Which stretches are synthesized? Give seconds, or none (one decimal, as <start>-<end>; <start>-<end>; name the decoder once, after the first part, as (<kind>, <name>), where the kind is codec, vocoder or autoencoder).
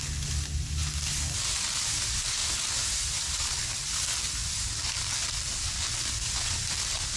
2.4-3.5 (vocoder, BigVGAN v2)